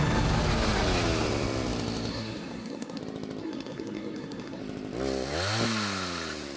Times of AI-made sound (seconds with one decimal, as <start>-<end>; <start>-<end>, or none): 2.1-3.0; 3.4-4.6